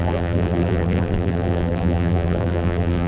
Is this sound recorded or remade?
remade